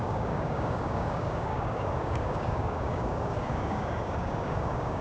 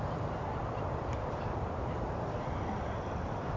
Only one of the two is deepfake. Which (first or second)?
first